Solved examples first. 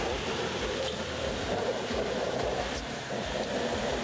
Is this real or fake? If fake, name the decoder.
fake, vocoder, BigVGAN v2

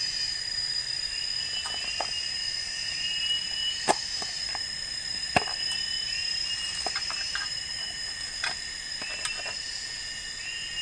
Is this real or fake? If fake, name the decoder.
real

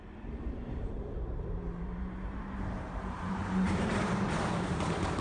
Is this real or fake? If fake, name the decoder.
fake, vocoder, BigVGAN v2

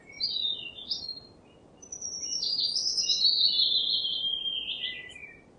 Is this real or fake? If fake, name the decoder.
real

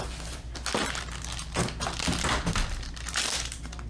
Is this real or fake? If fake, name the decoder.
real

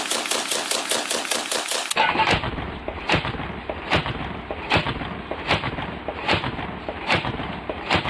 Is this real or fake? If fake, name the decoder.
real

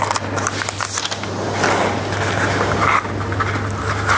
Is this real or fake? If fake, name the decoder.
real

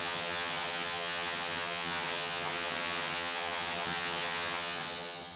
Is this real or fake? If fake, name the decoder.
fake, vocoder, HiFi-GAN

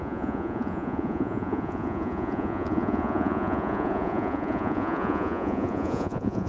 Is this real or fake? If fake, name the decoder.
fake, vocoder, Vocos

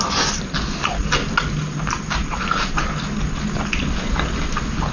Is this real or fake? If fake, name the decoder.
real